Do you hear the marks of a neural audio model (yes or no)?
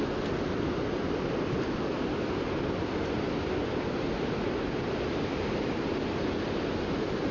no